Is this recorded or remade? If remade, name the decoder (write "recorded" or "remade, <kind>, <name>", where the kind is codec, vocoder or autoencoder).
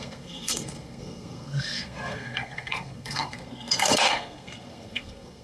remade, codec, SNAC